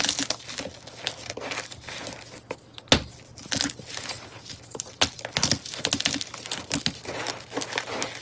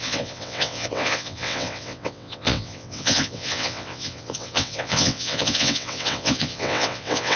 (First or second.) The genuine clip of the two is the first